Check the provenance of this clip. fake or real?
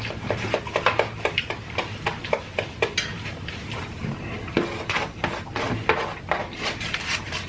real